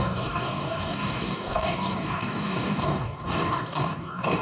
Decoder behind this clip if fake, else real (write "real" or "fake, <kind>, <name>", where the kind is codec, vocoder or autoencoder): fake, codec, DAC